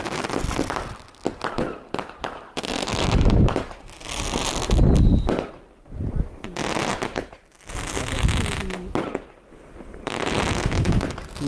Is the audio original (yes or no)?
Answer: yes